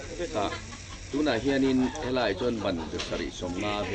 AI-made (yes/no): no